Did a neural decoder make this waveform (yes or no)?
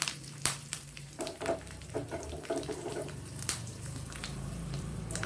yes